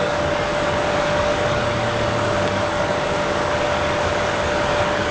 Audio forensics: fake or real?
fake